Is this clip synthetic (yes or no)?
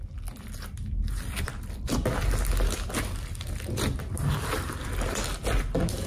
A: no